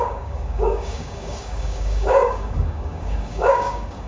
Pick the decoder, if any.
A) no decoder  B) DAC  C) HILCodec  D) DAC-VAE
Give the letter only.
B